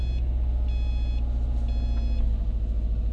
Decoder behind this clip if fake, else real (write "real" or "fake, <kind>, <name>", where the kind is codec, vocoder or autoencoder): real